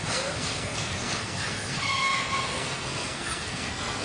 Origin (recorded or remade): remade